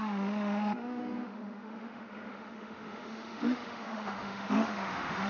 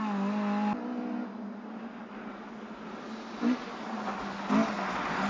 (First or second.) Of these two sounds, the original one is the second